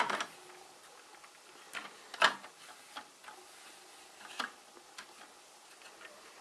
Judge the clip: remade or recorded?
recorded